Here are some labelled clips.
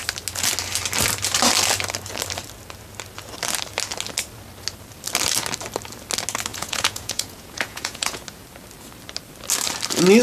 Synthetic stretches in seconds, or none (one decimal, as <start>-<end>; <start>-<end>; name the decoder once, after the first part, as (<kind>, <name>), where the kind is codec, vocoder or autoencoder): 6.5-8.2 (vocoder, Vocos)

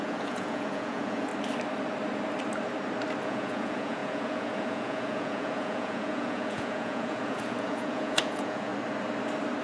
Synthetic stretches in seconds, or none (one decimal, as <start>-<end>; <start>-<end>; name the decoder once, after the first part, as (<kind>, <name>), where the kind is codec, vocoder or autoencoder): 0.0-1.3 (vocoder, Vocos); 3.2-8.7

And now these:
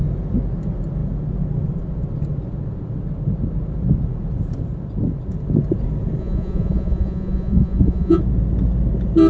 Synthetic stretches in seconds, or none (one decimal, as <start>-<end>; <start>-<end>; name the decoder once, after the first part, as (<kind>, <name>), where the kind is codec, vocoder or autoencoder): 6.2-8.2 (vocoder, Vocos)

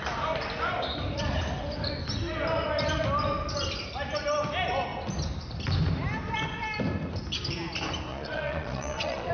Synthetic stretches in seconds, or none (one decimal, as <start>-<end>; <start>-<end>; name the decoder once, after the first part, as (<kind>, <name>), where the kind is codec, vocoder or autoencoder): 8.1-9.3 (vocoder, Vocos)

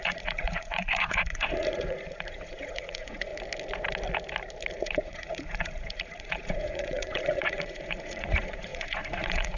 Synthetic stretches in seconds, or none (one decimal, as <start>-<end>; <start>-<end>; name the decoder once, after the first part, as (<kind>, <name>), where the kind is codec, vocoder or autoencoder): 0.0-3.3 (vocoder, Vocos); 4.7-9.6

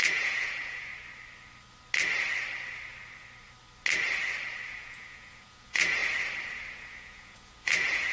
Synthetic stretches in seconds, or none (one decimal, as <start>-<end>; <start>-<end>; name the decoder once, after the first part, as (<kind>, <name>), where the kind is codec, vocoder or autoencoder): 0.0-0.9 (vocoder, Vocos); 4.7-6.0; 6.8-8.1